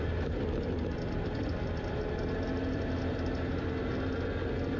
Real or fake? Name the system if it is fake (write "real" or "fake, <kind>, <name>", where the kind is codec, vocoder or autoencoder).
real